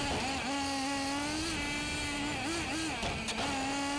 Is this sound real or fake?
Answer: real